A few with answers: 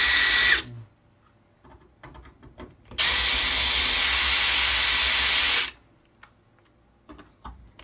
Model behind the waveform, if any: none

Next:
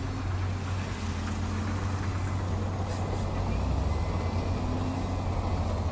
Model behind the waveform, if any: none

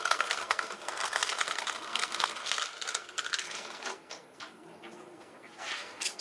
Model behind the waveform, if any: codec, SNAC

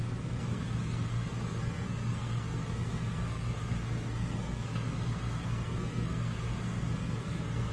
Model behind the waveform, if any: codec, SNAC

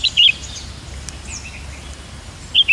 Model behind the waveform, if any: none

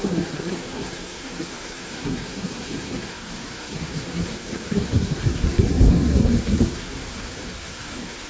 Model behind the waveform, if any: codec, SNAC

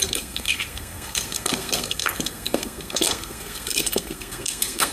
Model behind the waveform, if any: codec, SNAC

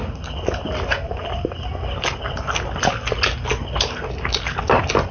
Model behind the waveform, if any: none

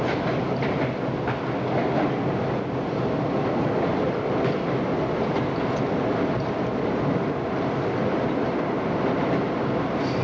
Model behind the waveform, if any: none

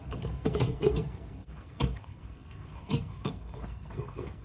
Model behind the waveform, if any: codec, SNAC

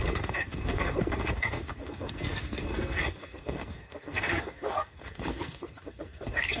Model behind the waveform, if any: codec, SNAC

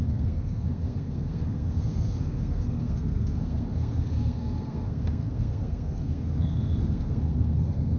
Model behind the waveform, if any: codec, SNAC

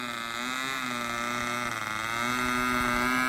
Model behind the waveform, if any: none